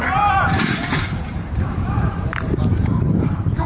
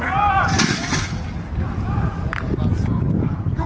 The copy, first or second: first